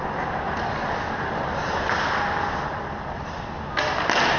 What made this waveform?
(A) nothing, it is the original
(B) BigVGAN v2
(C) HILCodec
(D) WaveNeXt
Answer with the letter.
A